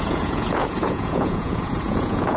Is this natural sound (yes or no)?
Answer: no